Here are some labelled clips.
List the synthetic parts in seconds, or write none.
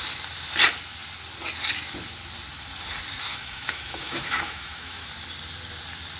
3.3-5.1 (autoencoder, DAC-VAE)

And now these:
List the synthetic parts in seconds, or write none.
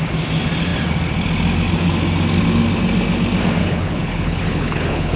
3.6-5.2 (codec, HILCodec)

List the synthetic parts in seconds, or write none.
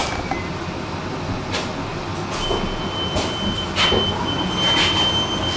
none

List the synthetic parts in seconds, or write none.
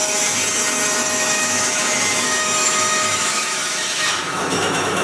0.0-0.4 (autoencoder, DAC-VAE); 1.1-5.0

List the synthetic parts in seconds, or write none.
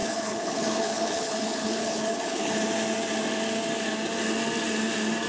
0.0-2.6 (codec, HILCodec)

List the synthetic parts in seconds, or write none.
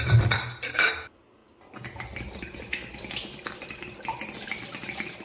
0.0-1.4 (vocoder, BigVGAN v2); 3.5-5.2